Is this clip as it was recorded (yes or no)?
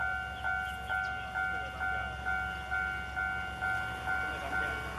yes